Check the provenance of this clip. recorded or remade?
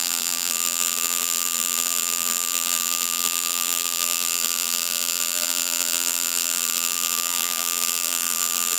remade